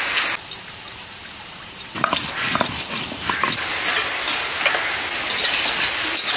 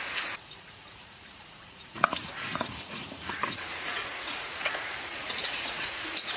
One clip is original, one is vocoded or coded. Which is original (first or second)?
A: first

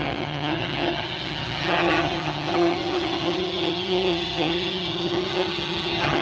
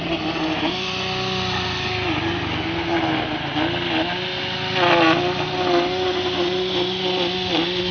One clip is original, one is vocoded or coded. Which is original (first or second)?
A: second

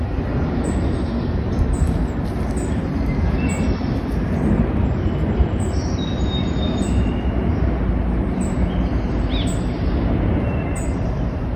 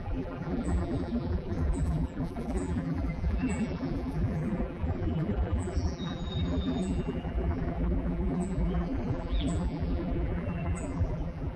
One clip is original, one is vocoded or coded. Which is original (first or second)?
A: first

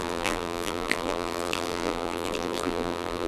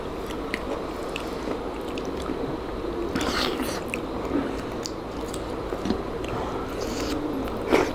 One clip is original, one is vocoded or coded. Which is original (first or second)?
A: second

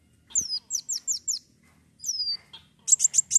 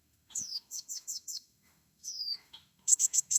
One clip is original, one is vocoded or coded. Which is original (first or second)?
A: first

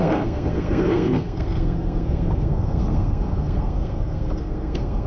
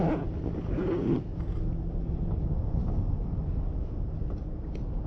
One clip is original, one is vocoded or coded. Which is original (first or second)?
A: second